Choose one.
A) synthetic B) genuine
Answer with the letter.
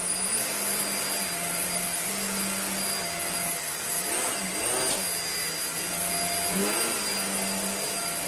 B